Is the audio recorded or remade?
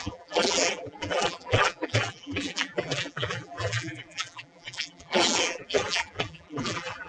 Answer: remade